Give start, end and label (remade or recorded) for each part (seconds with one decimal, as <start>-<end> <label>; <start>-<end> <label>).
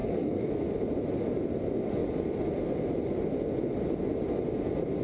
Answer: 0.0-0.5 remade; 0.5-5.0 recorded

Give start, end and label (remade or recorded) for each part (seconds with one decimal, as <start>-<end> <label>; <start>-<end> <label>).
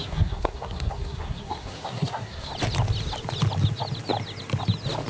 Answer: 0.0-2.5 remade; 2.5-5.1 recorded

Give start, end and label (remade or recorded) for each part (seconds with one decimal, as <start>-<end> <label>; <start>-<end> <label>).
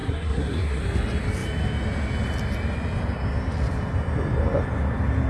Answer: 0.0-0.8 remade; 0.8-5.3 recorded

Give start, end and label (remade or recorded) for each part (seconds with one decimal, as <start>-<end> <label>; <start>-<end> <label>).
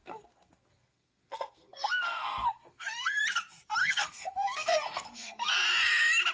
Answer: 0.0-3.2 remade; 3.2-3.8 recorded; 3.8-5.5 remade; 5.5-6.3 recorded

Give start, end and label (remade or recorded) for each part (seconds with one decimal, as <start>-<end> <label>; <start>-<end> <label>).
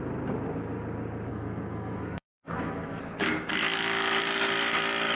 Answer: 0.0-1.3 recorded; 1.3-3.0 remade; 3.0-5.1 recorded